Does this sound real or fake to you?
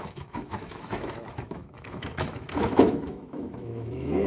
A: fake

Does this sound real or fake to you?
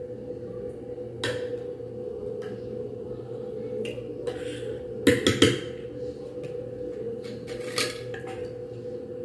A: real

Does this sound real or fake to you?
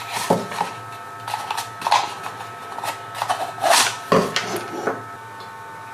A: real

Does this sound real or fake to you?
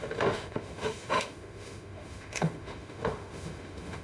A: fake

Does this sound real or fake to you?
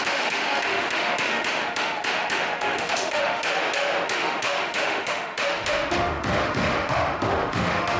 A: fake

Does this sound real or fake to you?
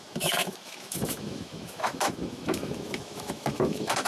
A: fake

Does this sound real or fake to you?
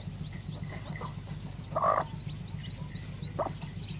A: real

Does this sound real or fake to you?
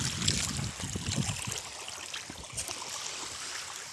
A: real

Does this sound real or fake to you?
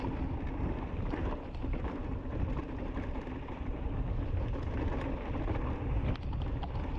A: real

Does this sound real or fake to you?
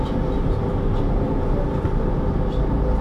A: real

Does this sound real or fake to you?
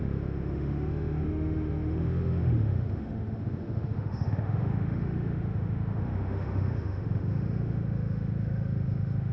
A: fake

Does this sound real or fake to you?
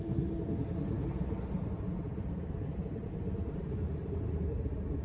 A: real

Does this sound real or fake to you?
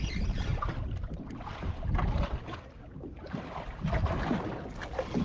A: real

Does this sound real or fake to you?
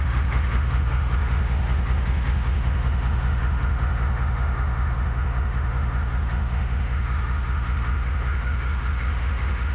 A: fake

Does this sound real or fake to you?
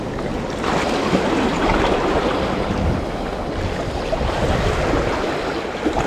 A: real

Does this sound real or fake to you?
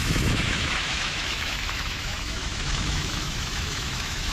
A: fake